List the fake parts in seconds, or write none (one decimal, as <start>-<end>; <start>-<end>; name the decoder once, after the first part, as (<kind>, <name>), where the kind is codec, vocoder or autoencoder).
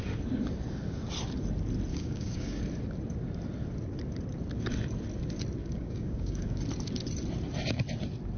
1.9-2.6 (codec, DAC); 5.6-6.6